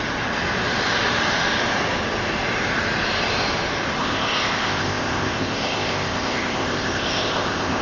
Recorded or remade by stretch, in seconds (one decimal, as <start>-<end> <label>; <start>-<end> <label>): 0.0-4.0 recorded; 4.0-7.8 remade